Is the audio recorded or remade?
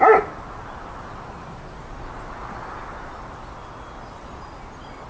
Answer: recorded